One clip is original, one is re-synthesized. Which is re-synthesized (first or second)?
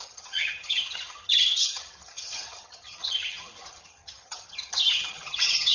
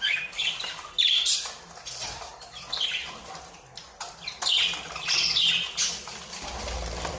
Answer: first